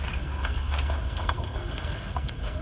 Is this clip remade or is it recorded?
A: remade